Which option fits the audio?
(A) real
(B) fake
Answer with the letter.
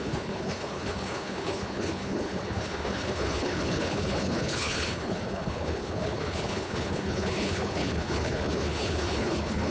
B